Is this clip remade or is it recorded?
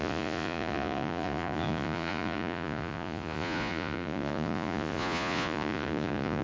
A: remade